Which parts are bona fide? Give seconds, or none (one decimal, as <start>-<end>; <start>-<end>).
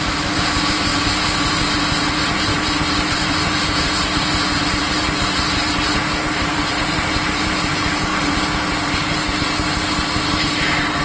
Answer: 0.9-1.5; 2.5-6.3; 8.1-10.4